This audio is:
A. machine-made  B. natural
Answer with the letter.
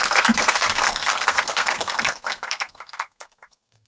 A